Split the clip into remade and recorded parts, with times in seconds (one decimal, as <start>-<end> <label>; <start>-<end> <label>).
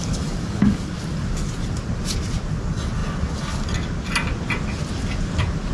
0.0-0.9 remade; 0.9-5.7 recorded